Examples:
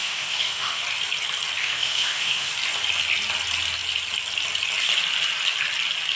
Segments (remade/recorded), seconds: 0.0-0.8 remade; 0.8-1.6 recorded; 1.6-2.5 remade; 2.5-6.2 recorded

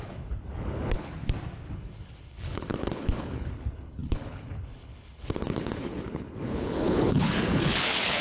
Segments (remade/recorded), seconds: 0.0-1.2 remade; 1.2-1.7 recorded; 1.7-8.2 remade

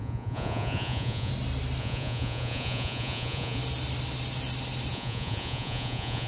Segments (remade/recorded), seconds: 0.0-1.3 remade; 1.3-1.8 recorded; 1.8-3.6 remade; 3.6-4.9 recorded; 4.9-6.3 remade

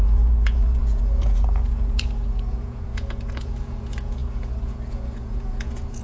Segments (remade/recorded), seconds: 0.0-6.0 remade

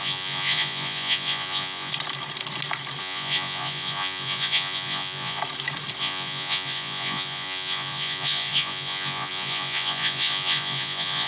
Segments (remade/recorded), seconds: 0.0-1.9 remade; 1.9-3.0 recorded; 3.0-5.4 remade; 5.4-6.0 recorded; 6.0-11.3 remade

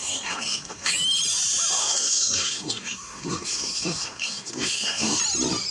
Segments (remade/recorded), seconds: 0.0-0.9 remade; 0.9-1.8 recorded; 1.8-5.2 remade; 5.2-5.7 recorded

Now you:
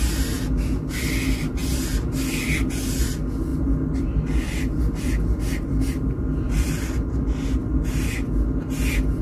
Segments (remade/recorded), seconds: 0.0-3.5 recorded; 3.5-6.7 remade; 6.7-9.2 recorded